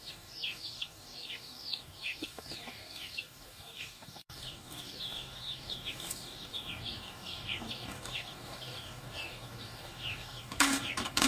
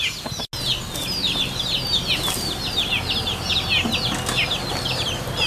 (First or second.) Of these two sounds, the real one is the second